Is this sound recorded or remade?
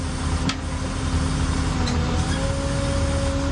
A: recorded